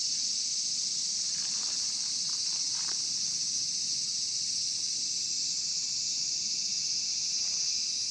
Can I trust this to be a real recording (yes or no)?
yes